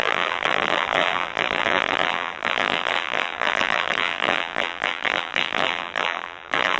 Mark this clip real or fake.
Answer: fake